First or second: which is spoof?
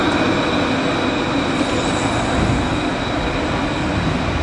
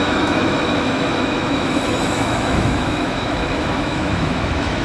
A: second